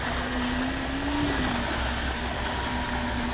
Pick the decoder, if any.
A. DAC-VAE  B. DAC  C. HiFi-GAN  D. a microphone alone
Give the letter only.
D